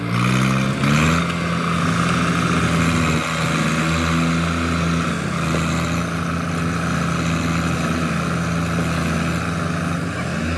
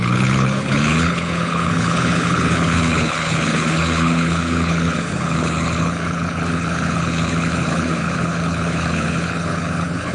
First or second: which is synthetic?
second